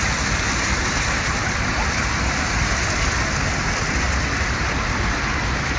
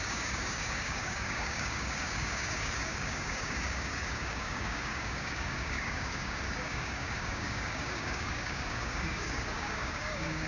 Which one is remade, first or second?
second